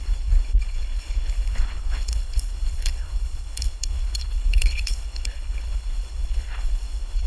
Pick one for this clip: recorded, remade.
remade